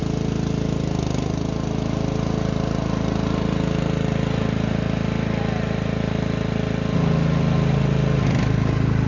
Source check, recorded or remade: recorded